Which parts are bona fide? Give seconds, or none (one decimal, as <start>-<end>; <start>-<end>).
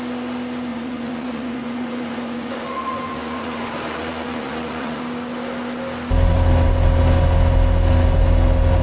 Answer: 0.0-0.7; 5.0-8.8